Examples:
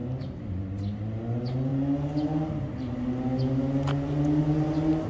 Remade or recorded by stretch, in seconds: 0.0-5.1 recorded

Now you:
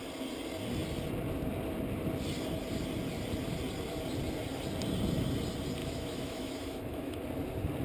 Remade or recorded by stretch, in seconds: 0.0-5.8 recorded; 5.8-7.2 remade; 7.2-7.8 recorded

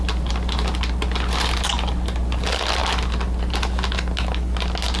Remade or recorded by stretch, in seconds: 0.0-5.0 recorded